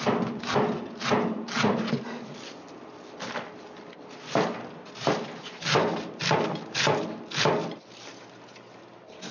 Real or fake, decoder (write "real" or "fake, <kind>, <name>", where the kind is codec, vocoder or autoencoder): real